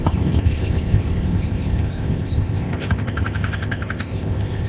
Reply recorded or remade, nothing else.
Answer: remade